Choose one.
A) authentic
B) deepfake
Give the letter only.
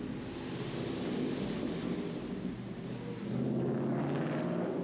A